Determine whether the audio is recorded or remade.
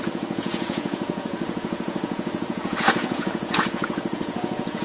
remade